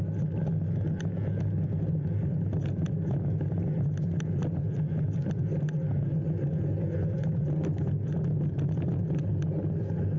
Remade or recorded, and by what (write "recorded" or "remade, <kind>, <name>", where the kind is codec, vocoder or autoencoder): recorded